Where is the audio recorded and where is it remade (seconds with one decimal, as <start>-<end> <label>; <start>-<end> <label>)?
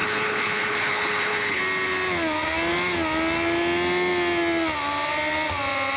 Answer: 0.0-1.6 remade; 1.6-6.0 recorded